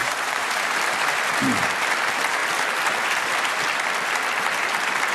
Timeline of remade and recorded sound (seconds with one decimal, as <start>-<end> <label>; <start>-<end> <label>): 0.0-0.5 remade; 0.5-5.1 recorded